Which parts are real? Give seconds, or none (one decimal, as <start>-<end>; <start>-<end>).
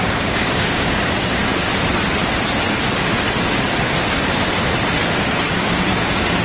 1.7-5.5